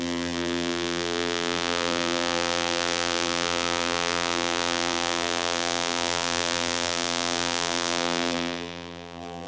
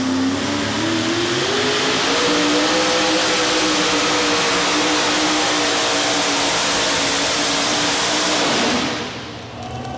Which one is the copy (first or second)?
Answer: first